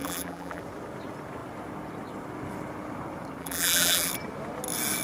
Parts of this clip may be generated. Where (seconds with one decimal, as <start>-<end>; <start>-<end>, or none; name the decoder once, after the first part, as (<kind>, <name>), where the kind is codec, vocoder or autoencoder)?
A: 0.0-0.6 (vocoder, BigVGAN v2); 3.4-4.1

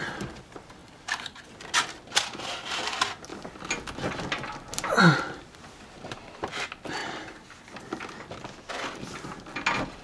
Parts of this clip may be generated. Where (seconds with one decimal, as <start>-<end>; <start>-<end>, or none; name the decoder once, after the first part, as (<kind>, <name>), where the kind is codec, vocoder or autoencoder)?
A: 0.8-1.4 (vocoder, BigVGAN v2)

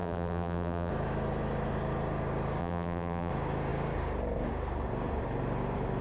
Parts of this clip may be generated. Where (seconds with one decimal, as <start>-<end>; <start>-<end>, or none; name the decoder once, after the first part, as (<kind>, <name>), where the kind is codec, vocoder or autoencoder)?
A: 0.0-0.9 (vocoder, BigVGAN v2); 2.6-3.3